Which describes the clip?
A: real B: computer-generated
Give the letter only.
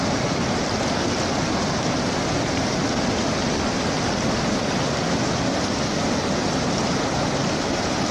A